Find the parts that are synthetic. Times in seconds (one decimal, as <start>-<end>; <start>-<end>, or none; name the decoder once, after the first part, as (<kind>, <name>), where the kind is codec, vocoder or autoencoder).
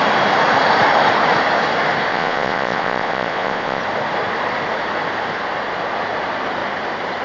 2.1-3.8 (vocoder, Vocos)